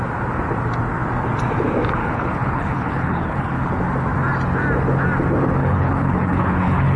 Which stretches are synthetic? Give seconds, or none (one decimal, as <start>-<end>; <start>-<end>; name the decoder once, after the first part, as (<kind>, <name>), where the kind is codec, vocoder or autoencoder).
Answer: 2.0-3.8 (codec, HILCodec); 5.6-7.0